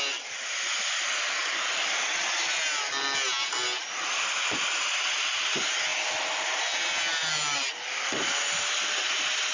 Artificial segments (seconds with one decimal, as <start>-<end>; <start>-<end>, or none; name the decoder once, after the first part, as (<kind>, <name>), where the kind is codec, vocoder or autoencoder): none

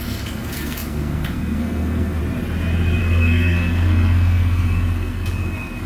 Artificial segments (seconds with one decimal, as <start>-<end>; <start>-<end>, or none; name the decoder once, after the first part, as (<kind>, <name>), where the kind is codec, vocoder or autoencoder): 0.0-2.2 (codec, SNAC); 3.0-5.9

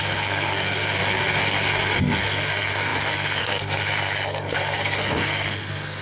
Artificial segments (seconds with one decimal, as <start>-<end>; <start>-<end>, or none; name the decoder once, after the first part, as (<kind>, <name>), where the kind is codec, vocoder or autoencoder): 0.0-6.0 (codec, SNAC)

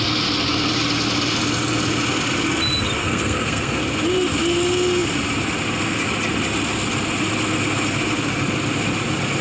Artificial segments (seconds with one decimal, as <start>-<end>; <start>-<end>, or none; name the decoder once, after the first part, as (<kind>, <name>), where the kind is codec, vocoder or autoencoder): 3.0-3.8 (codec, SNAC)

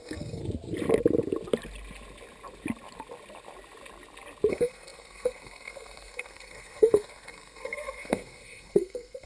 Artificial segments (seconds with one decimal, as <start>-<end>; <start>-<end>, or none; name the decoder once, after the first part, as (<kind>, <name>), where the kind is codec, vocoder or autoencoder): 0.0-0.4 (codec, SNAC); 4.5-9.3